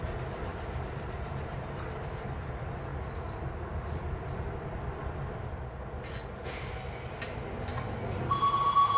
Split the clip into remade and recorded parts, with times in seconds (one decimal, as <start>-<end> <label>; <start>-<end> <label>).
0.0-0.5 recorded; 0.5-2.5 remade; 2.5-9.0 recorded